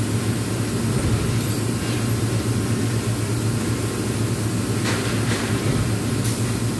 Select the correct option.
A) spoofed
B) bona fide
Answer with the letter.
B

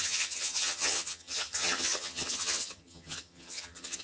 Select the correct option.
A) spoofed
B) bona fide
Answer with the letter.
A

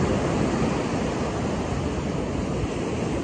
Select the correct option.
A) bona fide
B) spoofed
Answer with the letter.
A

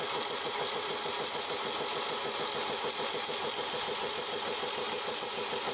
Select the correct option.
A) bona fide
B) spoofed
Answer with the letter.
A